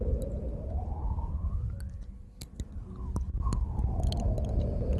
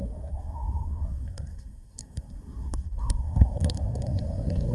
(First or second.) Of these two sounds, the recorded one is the first